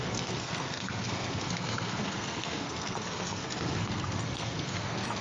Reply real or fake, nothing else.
fake